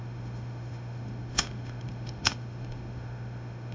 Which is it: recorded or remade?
remade